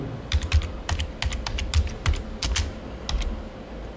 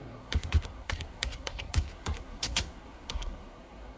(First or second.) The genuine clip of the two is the first